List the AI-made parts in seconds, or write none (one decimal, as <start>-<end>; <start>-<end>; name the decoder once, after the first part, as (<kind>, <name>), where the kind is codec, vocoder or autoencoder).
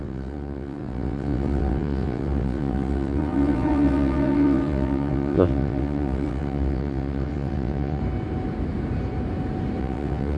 0.0-8.0 (vocoder, WaveNeXt); 9.8-10.4